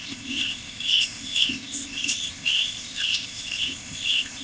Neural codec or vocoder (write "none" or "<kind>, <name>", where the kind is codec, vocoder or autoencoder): codec, ZipCodec